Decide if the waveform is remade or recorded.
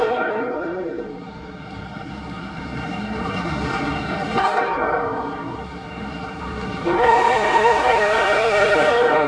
remade